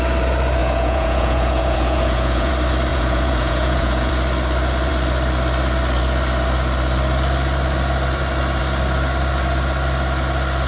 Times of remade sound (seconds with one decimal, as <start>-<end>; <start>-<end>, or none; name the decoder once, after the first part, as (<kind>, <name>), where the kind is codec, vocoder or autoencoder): 0.6-2.5 (vocoder, Vocos); 2.9-4.1